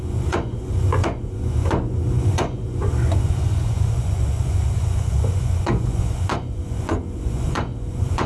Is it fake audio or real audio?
fake